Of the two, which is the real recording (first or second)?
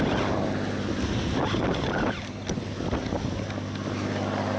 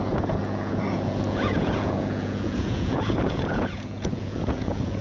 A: first